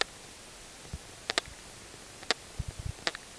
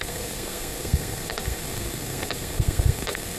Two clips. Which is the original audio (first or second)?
first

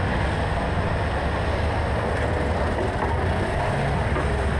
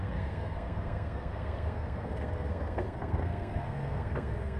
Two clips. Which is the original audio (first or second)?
first